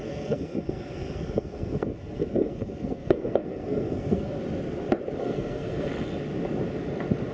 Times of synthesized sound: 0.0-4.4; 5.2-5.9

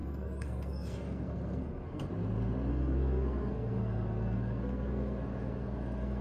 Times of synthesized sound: 0.0-2.1; 2.7-6.2

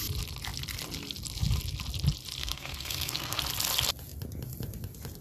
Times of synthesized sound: 2.4-3.4

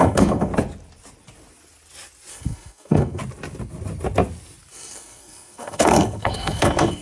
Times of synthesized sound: 0.0-0.5; 2.3-3.2; 4.7-7.0

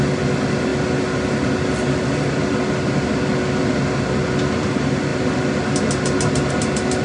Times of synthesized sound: none

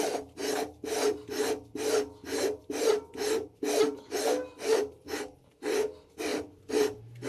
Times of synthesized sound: none

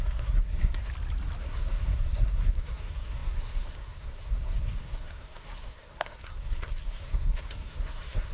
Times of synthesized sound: 0.0-0.9; 1.4-8.3